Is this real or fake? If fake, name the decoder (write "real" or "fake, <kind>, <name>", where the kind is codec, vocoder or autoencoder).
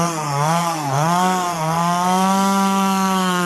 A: fake, codec, SNAC